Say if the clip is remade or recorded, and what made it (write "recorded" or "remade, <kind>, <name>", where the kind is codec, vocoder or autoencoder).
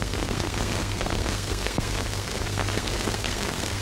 remade, codec, SNAC